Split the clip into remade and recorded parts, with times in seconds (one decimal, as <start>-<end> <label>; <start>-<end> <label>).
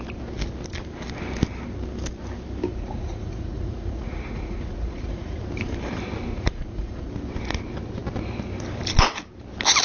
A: 0.0-2.7 recorded; 2.7-5.4 remade; 5.4-6.3 recorded; 6.3-7.1 remade; 7.1-9.8 recorded